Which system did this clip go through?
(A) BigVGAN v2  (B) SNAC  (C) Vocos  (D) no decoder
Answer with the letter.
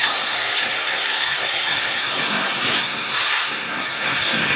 B